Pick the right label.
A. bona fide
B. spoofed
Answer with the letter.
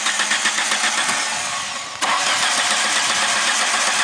B